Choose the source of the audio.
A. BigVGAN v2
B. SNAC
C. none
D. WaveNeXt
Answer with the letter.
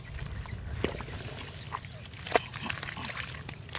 C